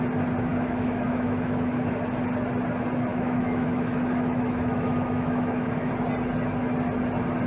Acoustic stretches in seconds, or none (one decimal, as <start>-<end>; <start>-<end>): 0.0-0.5; 1.9-3.1; 5.9-7.5